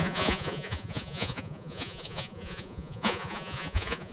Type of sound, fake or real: fake